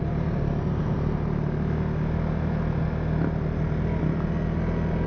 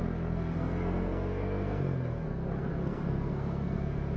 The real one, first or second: first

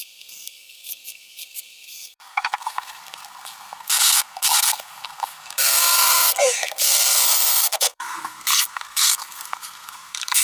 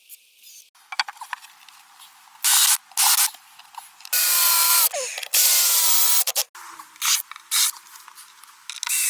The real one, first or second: second